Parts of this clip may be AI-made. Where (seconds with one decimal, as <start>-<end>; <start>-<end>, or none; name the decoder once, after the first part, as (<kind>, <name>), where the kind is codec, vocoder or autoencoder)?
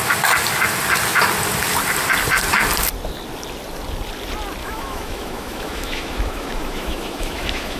4.6-7.8 (autoencoder, DAC-VAE)